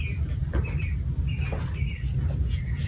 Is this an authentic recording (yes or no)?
yes